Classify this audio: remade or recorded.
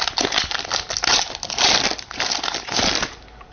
recorded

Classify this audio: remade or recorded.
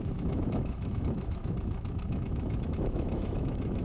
remade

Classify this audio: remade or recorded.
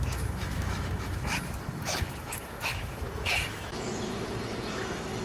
remade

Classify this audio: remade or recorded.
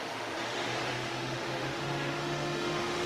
remade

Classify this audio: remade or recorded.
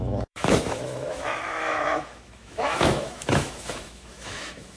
remade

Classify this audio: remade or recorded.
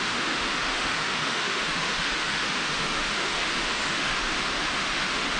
remade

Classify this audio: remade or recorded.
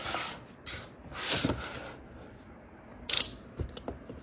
recorded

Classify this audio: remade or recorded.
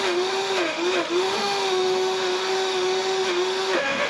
remade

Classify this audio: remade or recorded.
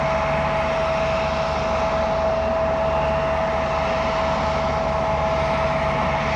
recorded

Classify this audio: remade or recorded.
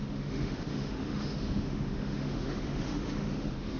remade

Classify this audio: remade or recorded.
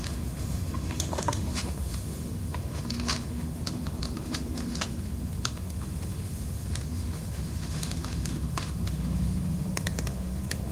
remade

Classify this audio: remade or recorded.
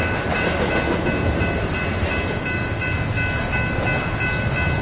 recorded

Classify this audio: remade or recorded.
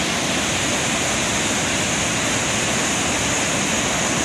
recorded